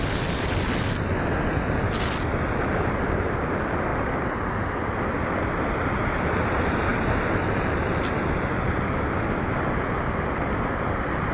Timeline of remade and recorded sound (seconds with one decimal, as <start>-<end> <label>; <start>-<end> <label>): 0.0-11.3 recorded